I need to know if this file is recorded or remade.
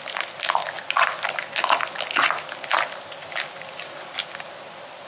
recorded